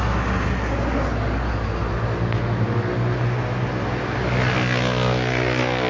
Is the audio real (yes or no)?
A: yes